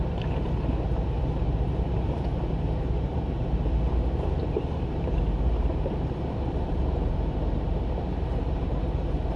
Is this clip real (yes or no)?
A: no